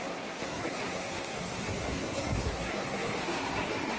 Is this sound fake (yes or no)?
yes